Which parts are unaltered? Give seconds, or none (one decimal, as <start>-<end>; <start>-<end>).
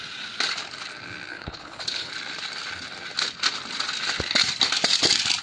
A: 0.0-1.3; 2.1-5.4